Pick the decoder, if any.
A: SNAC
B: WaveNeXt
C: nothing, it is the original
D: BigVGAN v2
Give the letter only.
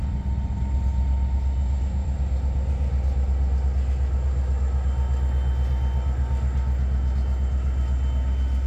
C